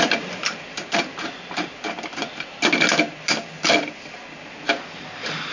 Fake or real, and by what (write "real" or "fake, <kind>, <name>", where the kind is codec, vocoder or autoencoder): real